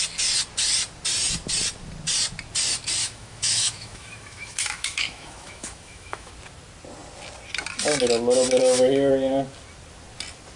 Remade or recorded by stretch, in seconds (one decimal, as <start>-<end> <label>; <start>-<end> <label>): 0.0-3.0 recorded; 3.0-6.3 remade; 6.3-8.6 recorded; 8.6-9.1 remade; 9.1-10.6 recorded